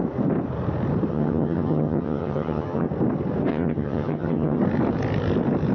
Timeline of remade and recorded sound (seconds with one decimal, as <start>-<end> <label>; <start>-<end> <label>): 0.0-1.1 recorded; 1.1-2.9 remade; 2.9-3.5 recorded; 3.5-4.6 remade; 4.6-5.7 recorded

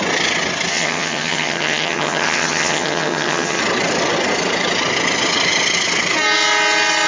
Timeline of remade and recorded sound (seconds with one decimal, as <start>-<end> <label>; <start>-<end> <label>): 0.0-0.7 recorded; 0.7-3.6 remade; 3.6-7.1 recorded

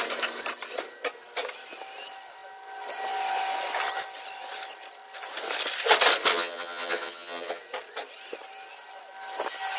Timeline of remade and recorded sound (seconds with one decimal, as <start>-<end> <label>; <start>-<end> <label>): 0.0-6.3 recorded; 6.3-7.6 remade; 7.6-9.8 recorded

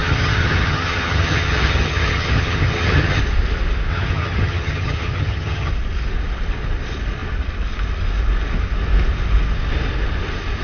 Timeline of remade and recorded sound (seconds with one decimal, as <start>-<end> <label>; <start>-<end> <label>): 0.0-3.2 remade; 3.2-3.9 recorded; 3.9-5.7 remade; 5.7-10.6 recorded

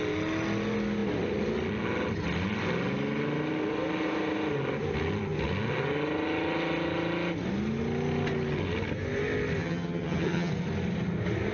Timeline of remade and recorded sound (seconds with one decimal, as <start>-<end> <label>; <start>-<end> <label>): 0.0-9.6 recorded; 9.6-10.5 remade; 10.5-11.5 recorded

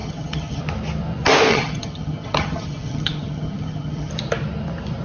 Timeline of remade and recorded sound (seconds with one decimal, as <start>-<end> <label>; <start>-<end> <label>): 0.0-0.6 remade; 0.6-1.5 recorded; 1.5-4.1 remade; 4.1-5.0 recorded